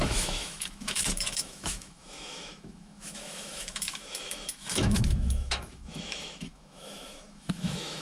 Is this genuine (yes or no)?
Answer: no